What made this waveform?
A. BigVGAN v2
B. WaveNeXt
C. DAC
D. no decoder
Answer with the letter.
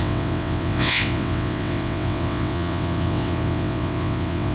B